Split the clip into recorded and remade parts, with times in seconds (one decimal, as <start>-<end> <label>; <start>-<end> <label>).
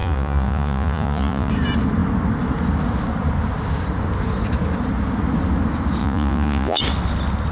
0.0-1.5 remade; 1.5-6.0 recorded; 6.0-6.8 remade; 6.8-7.5 recorded